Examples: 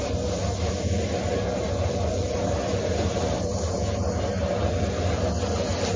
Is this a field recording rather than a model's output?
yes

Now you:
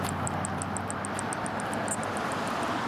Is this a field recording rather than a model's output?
yes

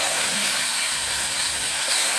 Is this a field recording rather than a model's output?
no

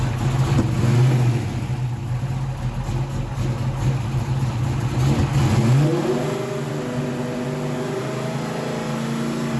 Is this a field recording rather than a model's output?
yes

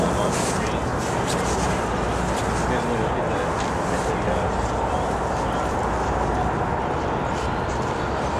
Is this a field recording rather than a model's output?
yes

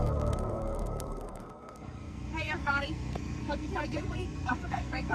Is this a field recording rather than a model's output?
no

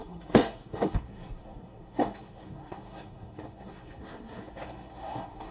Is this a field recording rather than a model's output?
no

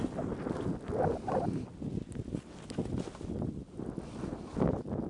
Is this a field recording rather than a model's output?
yes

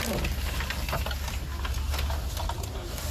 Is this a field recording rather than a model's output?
yes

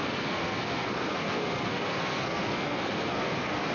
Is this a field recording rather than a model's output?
no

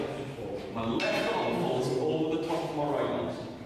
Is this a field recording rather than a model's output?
yes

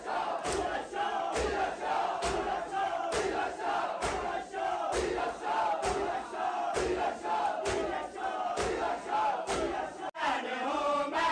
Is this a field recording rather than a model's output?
yes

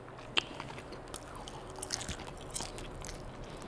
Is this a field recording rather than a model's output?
yes